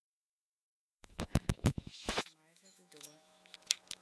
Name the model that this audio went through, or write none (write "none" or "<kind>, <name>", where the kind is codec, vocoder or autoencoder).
autoencoder, DAC-VAE